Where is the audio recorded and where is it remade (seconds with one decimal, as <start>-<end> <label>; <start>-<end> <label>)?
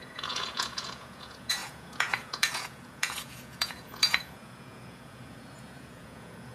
0.0-6.5 remade